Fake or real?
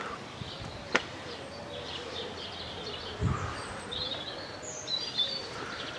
fake